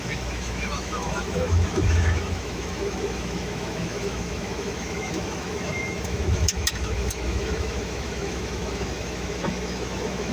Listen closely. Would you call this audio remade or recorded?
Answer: remade